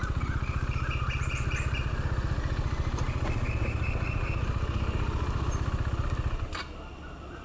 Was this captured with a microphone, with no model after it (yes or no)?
yes